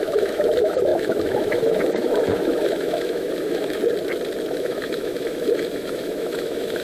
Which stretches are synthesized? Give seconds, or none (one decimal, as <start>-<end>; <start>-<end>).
0.0-3.8; 4.5-6.8